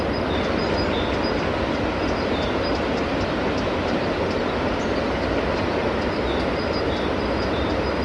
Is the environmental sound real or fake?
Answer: real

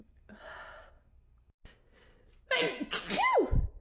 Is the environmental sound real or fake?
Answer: real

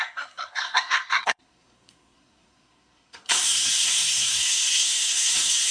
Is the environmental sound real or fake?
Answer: fake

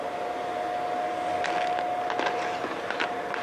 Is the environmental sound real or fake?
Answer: real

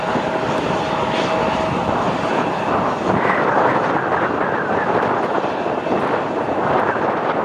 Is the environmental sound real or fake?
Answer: real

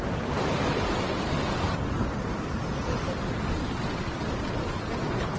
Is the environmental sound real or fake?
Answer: real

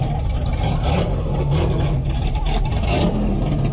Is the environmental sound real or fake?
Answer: fake